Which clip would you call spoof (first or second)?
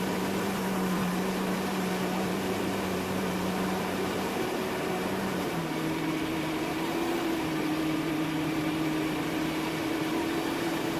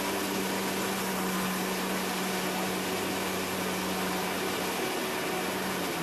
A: first